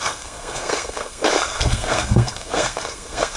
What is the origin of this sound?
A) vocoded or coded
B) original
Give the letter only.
A